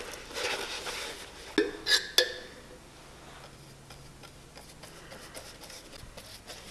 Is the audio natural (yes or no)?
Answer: yes